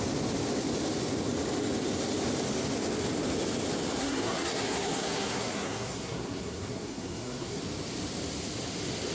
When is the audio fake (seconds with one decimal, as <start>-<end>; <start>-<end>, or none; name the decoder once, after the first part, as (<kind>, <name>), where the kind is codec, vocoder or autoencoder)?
4.0-7.6 (codec, SNAC)

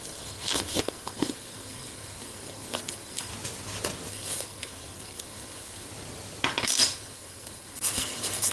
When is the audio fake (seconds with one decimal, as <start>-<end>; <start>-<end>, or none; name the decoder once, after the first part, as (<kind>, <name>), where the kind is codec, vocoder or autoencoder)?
0.0-3.3 (codec, SNAC); 4.1-5.9; 6.6-8.5

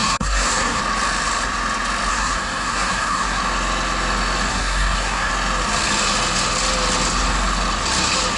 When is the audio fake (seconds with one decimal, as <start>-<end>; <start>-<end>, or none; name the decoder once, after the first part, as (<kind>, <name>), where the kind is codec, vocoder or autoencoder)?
0.0-0.8 (codec, SNAC); 2.1-3.4; 4.5-5.3

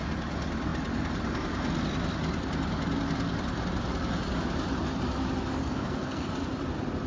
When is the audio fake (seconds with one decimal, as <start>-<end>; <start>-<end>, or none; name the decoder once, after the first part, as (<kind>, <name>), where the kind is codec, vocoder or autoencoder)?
5.6-6.3 (codec, SNAC)